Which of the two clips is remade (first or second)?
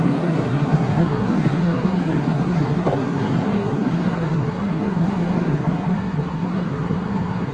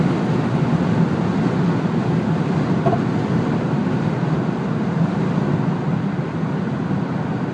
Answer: first